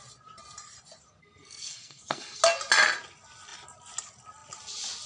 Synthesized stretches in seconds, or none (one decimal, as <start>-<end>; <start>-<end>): 1.2-2.4